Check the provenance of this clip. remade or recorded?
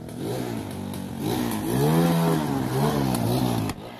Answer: recorded